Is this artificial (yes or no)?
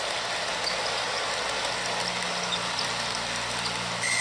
no